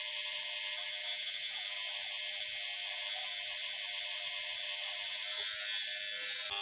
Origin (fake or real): real